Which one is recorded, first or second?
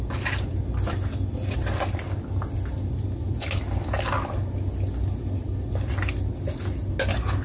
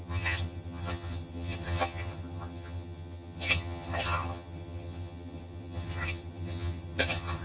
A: first